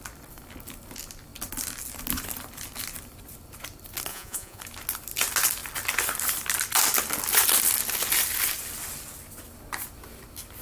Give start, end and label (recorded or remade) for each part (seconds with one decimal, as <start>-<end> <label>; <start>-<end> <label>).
0.0-4.1 recorded; 4.1-4.6 remade; 4.6-10.6 recorded